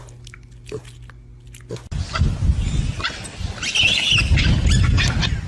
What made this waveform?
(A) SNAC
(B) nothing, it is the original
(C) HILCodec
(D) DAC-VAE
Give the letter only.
B